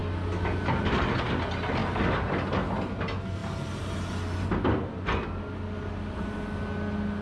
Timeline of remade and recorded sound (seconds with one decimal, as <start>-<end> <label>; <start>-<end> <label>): 0.0-7.2 recorded